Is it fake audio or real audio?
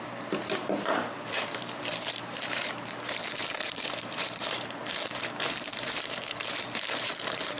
fake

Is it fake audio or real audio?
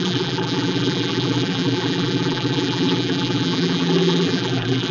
fake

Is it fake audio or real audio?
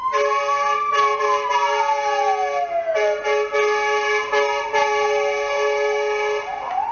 real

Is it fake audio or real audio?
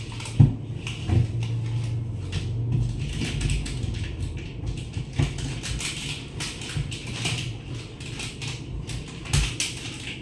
real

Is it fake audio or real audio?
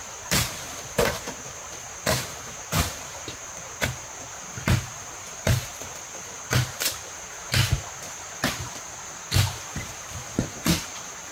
fake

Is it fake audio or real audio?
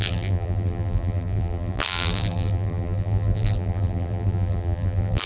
fake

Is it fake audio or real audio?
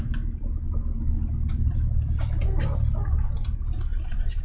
real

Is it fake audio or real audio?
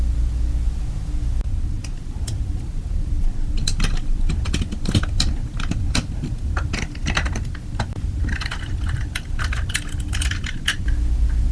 real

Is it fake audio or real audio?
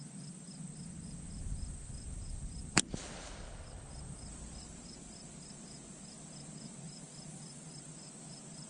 real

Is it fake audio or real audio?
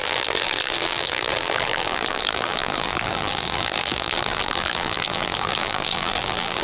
fake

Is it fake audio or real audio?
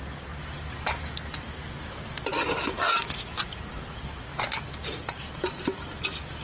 real